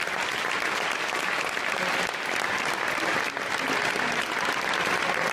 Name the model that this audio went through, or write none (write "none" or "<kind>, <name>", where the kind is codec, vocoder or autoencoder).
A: none